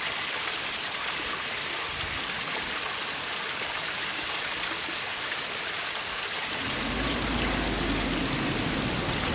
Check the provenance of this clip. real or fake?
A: real